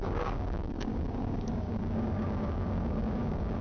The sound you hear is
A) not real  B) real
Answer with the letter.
A